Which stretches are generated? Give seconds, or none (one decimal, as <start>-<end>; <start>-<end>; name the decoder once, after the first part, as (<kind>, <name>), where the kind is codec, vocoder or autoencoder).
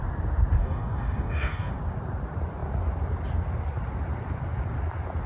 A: 0.6-1.7 (codec, DAC)